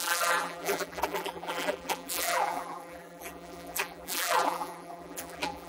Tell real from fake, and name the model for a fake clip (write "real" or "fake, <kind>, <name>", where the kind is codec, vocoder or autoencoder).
fake, vocoder, BigVGAN v2